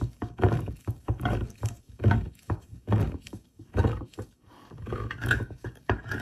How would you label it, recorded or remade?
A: remade